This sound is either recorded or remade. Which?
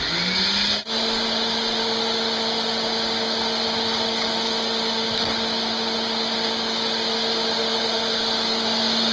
recorded